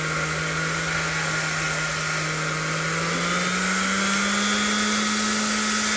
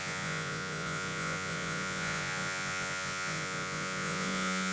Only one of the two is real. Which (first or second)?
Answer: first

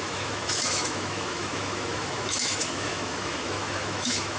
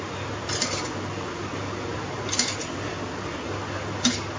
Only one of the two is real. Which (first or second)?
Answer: second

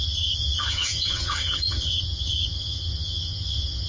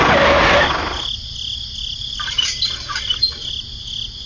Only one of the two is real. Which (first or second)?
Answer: second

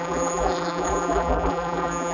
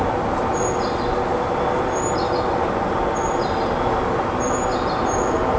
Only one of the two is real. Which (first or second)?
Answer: second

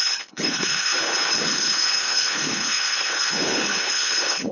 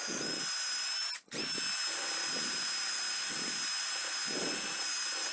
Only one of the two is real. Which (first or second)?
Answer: second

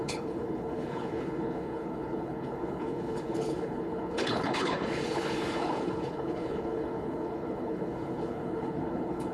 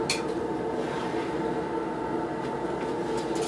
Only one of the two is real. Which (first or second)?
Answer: second